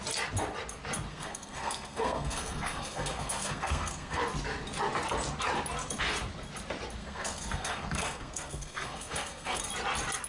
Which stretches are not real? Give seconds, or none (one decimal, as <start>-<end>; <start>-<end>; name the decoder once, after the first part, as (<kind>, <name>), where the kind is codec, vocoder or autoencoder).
1.1-4.2 (codec, SNAC); 7.0-9.6